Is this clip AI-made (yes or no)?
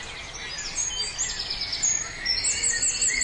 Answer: no